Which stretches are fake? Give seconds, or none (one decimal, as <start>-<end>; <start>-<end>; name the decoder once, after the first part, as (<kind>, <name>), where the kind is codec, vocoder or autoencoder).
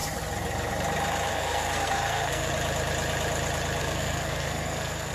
1.3-2.5 (codec, SNAC); 3.8-5.1